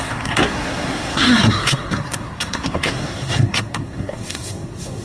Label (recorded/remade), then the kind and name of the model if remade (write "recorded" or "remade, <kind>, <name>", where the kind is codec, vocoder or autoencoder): remade, codec, SNAC